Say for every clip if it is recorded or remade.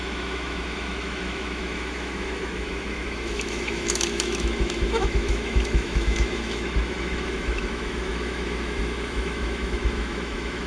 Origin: remade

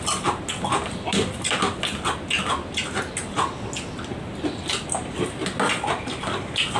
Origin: recorded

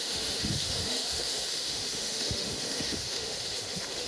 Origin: remade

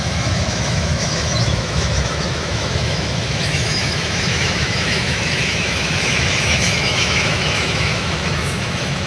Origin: remade